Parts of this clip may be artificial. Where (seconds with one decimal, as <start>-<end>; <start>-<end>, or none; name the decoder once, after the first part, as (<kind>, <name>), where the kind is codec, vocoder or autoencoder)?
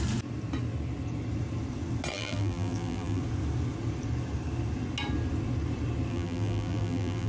2.1-3.2 (vocoder, BigVGAN v2); 6.1-7.3